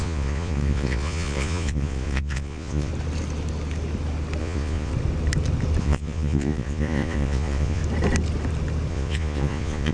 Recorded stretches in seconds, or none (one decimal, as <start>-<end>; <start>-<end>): 2.9-4.4; 4.9-5.8; 7.8-8.9